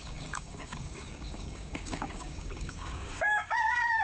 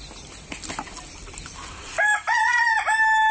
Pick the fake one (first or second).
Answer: first